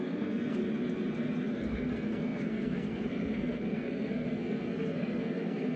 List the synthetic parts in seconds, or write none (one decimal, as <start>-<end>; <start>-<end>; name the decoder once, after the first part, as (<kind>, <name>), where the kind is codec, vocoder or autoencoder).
0.0-0.6 (codec, SNAC); 1.5-5.8